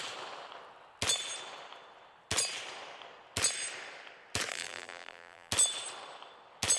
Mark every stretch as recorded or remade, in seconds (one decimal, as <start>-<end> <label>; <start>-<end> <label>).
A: 0.0-4.5 recorded; 4.5-5.5 remade; 5.5-6.8 recorded